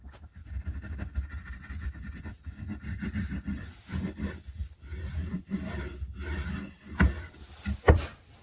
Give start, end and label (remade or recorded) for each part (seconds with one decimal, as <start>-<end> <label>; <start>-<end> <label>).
0.0-7.4 recorded; 7.4-7.9 remade; 7.9-8.4 recorded